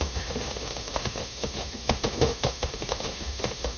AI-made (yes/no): yes